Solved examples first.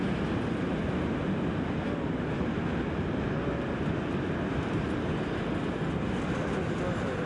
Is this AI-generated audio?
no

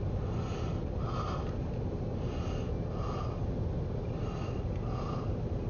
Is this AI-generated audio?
no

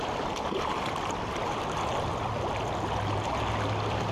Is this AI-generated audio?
no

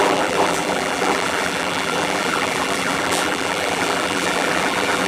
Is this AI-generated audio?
yes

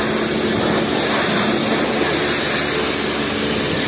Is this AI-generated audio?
no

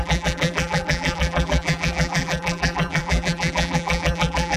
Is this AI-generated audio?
yes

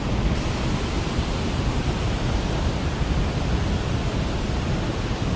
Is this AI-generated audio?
no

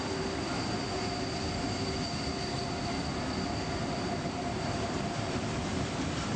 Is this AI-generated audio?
yes